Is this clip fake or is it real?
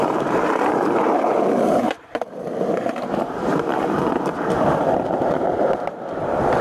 fake